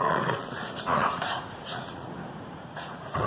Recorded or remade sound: remade